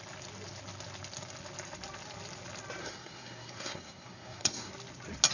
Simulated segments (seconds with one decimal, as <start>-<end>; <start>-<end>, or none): 2.8-4.7